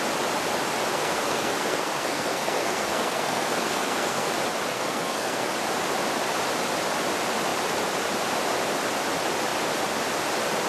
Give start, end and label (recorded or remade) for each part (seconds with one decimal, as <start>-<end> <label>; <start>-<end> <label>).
0.0-0.9 recorded; 0.9-4.3 remade; 4.3-4.7 recorded; 4.7-5.5 remade; 5.5-10.7 recorded